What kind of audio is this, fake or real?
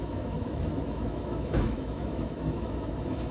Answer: fake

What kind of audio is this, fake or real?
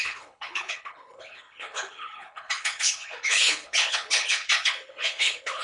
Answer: fake